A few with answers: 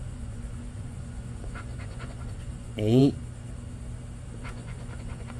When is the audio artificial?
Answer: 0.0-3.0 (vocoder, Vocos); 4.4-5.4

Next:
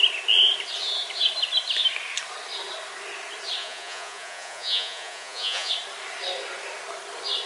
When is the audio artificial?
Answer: 3.6-5.7 (vocoder, Vocos)

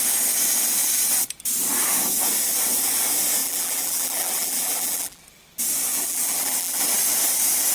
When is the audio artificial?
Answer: 3.4-5.2 (vocoder, BigVGAN v2); 5.9-6.8

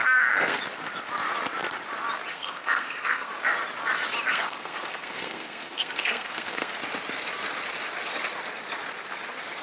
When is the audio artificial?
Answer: 0.0-0.6 (codec, SNAC); 2.3-3.3; 4.3-6.8

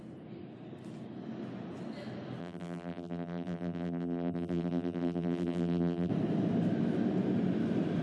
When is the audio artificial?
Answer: 2.4-6.1 (vocoder, BigVGAN v2)

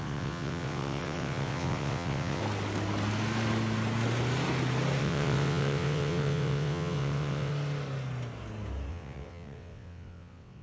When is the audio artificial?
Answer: 0.0-2.4 (vocoder, WaveNeXt); 5.0-7.5; 8.9-10.6

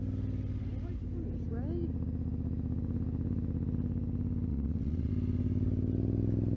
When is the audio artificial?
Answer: 4.5-5.1 (vocoder, WaveNeXt)